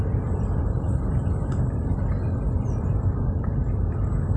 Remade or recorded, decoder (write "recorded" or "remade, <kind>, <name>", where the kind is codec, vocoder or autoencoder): recorded